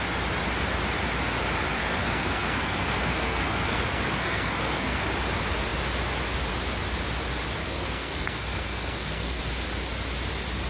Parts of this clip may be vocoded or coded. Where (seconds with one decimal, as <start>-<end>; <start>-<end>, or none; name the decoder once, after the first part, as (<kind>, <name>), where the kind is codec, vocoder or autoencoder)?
1.8-5.0 (codec, SNAC); 7.6-9.4